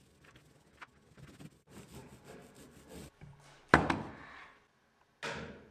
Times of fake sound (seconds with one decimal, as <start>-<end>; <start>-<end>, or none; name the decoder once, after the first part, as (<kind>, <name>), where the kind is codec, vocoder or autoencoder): none